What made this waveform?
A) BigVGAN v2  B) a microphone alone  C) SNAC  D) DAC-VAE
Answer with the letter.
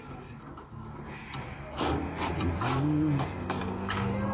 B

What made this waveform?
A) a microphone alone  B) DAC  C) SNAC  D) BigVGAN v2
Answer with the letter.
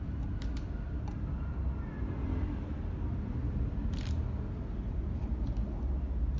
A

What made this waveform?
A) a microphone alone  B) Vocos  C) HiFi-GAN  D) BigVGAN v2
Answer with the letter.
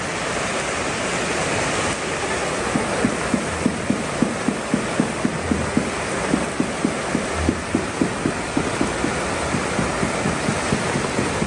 A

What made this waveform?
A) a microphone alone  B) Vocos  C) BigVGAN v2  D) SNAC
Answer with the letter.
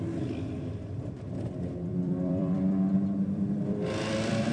C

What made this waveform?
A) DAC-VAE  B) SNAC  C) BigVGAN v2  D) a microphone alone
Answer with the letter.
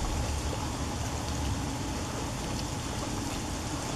D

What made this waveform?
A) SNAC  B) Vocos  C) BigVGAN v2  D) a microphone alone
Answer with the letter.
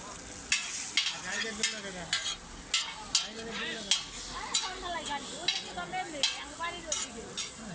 D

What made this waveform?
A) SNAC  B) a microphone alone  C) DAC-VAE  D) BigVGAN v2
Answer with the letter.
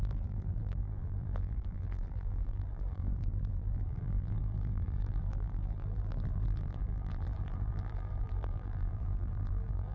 D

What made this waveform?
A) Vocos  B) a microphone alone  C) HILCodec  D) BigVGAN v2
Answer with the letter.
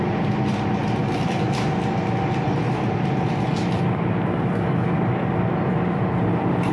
D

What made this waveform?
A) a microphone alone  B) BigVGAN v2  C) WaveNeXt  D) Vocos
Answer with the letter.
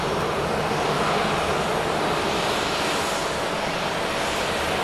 A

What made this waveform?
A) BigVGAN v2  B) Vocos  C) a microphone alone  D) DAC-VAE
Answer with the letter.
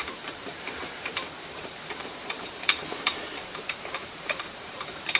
A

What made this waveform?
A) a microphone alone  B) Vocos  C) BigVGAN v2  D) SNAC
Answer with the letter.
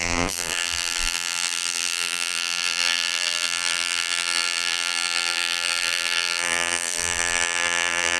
C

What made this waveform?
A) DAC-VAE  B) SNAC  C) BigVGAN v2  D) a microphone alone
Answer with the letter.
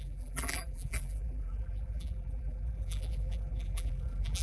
C